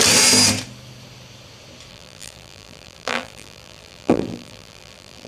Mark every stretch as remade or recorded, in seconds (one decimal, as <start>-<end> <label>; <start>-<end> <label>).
0.0-1.9 recorded; 1.9-5.3 remade

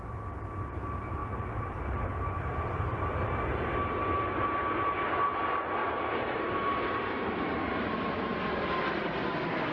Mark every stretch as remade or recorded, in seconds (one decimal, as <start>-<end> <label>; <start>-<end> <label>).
0.0-5.8 recorded; 5.8-9.0 remade; 9.0-9.7 recorded

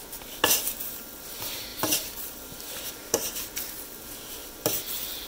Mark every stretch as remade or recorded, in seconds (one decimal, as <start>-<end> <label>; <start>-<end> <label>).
0.0-5.3 recorded

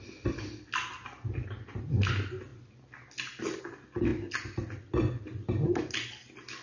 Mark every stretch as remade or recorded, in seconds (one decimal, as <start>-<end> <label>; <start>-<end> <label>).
0.0-6.6 recorded

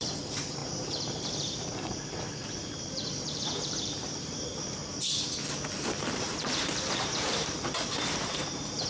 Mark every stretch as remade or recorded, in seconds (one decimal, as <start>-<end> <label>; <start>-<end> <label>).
0.0-4.8 remade; 4.8-6.0 recorded; 6.0-8.9 remade